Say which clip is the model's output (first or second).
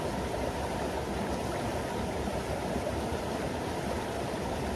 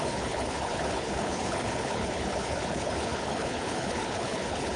second